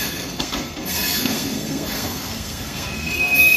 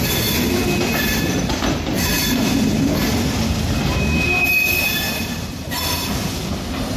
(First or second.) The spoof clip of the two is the first